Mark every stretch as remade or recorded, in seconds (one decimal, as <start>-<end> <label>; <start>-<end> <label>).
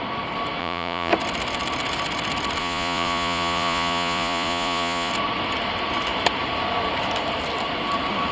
0.0-0.6 recorded; 0.6-1.1 remade; 1.1-2.6 recorded; 2.6-5.1 remade; 5.1-8.3 recorded